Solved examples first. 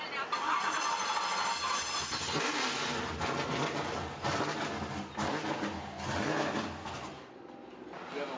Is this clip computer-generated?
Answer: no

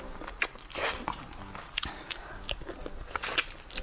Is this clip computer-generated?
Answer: no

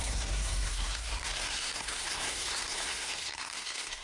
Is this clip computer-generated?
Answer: yes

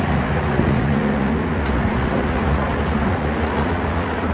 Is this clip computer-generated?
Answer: yes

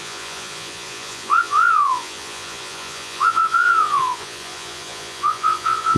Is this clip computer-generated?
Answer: yes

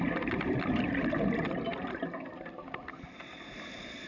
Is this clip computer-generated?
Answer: no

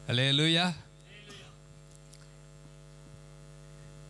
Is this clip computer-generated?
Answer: no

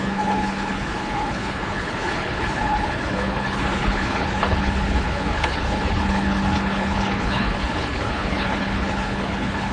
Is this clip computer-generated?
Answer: yes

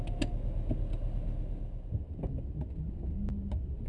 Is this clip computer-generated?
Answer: no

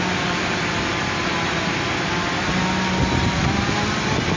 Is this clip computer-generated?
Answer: no